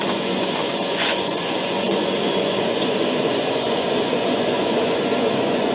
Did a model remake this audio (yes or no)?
yes